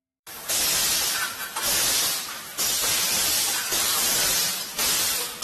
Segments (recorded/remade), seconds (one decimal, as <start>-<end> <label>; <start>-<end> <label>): 0.0-0.6 remade; 0.6-2.8 recorded; 2.8-4.8 remade; 4.8-5.4 recorded